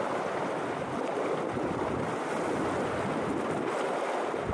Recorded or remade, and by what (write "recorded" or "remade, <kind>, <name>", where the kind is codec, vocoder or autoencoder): recorded